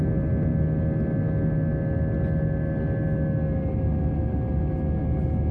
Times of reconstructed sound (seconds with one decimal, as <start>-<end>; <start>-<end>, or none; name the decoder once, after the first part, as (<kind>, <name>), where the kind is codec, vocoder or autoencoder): none

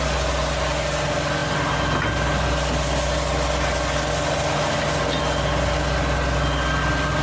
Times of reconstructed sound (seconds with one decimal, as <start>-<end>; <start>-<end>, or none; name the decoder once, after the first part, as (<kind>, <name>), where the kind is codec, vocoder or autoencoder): none

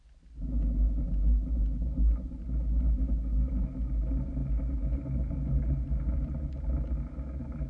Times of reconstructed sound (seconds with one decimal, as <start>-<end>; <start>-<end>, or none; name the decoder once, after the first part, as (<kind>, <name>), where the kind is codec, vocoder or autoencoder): none

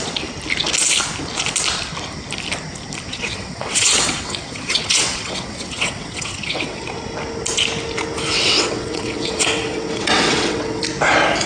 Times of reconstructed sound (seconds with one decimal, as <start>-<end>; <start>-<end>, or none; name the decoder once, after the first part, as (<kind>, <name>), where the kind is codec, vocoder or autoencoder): 3.1-6.8 (vocoder, WaveNeXt); 8.3-10.8

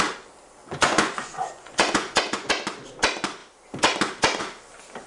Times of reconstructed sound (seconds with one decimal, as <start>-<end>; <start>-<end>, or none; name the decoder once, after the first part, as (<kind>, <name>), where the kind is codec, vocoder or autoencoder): 0.6-2.5 (vocoder, Vocos)

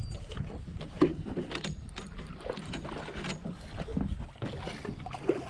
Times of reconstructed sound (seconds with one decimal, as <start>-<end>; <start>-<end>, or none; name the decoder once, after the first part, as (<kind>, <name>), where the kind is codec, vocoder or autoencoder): none

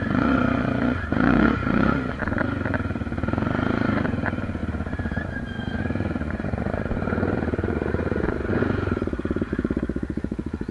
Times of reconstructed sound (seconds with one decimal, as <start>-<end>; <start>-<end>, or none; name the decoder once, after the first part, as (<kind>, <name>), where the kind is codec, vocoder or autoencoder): 0.0-10.7 (vocoder, Vocos)